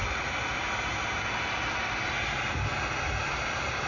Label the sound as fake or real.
real